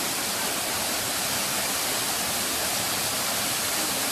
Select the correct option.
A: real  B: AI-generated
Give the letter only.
A